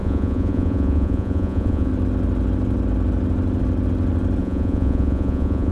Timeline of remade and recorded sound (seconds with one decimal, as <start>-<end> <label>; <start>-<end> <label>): 0.0-1.9 remade; 1.9-4.4 recorded; 4.4-5.7 remade